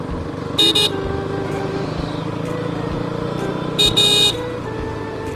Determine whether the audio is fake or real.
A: real